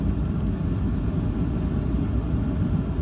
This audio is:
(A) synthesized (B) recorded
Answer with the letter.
B